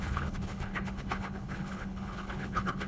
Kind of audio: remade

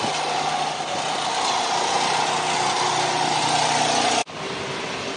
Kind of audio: recorded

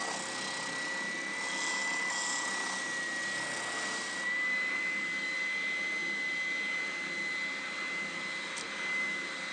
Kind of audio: recorded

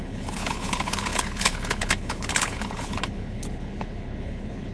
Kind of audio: remade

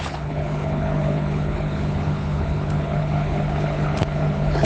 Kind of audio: remade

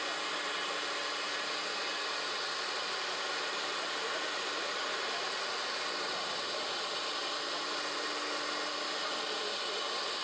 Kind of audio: recorded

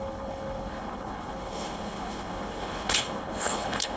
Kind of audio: remade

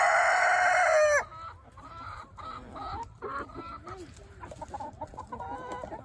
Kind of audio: recorded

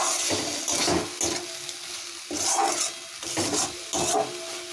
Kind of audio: recorded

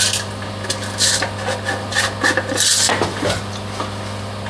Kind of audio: recorded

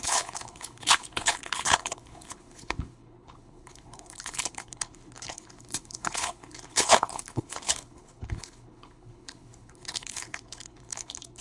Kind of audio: remade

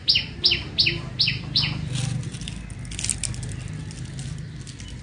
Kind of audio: recorded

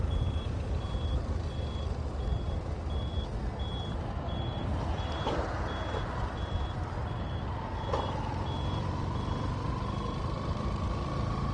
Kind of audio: recorded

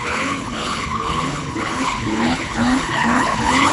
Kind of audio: remade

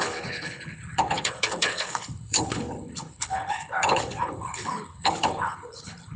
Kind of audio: remade